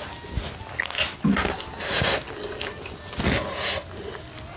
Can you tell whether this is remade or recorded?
recorded